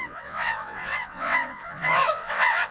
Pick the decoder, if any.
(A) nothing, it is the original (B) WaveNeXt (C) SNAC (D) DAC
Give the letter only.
B